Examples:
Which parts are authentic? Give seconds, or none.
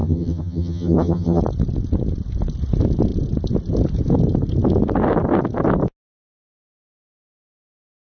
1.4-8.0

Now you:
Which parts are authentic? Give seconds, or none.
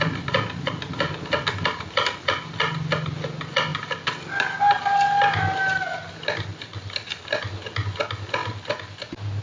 0.0-6.5; 7.5-8.4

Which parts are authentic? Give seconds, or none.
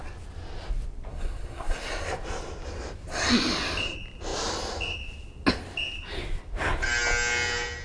0.0-1.1; 1.9-7.8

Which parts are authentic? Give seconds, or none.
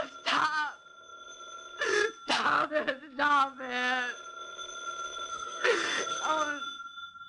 0.0-5.3; 6.2-7.3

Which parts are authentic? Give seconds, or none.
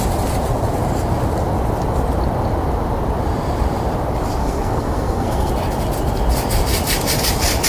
0.0-4.4; 5.5-7.7